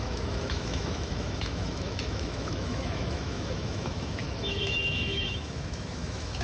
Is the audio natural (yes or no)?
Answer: no